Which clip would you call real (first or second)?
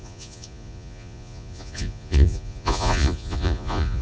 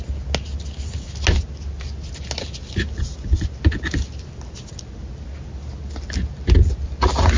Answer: second